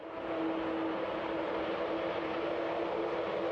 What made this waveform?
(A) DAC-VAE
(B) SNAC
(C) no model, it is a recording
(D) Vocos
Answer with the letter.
C